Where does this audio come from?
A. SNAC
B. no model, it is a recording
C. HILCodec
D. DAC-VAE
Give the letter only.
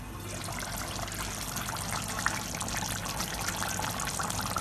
B